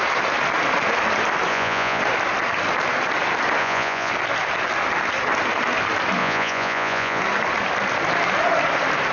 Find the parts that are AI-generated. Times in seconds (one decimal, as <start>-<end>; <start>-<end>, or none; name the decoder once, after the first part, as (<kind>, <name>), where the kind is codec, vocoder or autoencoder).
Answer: 1.5-2.0 (vocoder, Vocos); 3.6-4.1; 6.2-7.2